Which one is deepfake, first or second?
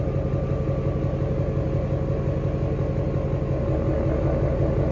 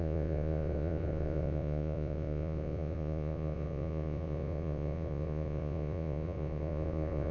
second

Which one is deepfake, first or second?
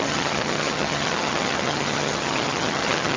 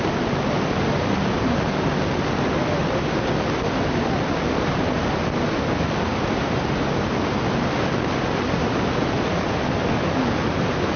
first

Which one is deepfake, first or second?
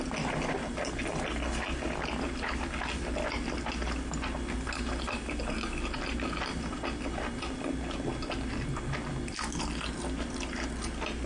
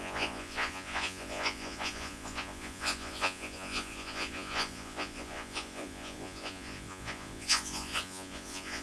second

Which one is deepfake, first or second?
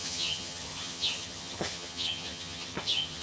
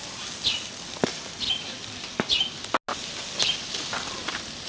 first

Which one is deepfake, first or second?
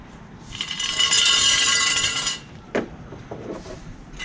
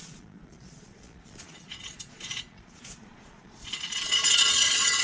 second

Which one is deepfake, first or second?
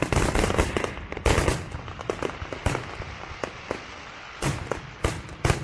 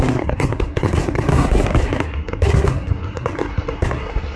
second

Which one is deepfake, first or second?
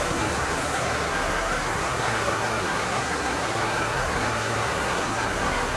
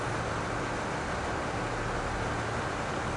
first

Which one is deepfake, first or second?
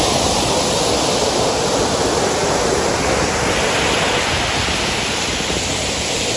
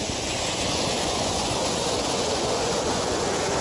second